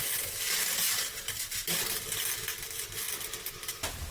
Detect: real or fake real